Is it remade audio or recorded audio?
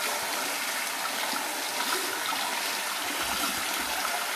recorded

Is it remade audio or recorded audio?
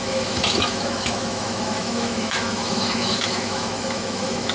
remade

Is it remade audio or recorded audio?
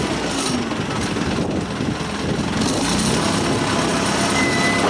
recorded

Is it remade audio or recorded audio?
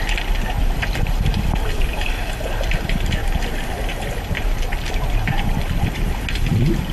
recorded